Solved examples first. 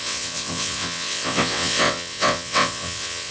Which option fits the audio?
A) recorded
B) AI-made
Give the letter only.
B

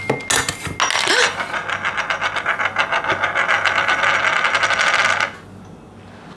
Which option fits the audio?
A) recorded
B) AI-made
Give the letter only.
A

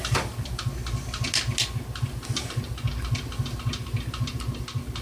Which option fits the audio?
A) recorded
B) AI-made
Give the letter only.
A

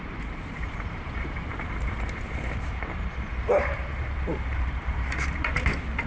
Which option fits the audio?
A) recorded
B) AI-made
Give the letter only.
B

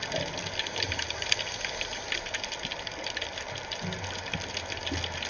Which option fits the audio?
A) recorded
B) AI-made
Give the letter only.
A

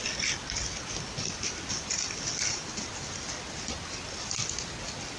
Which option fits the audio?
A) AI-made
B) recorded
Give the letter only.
B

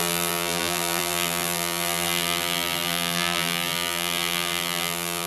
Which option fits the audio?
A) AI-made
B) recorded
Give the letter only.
A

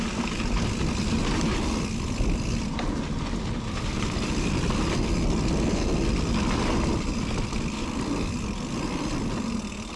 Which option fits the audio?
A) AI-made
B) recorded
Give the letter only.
B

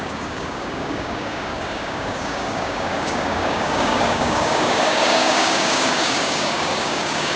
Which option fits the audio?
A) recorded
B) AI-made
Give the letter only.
B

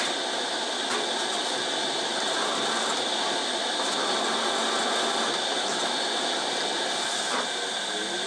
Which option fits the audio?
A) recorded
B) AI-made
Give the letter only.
A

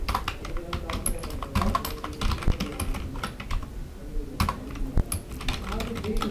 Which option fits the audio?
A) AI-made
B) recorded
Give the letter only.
B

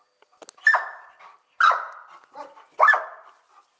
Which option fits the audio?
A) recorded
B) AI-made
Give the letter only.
A